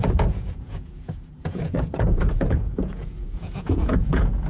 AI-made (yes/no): yes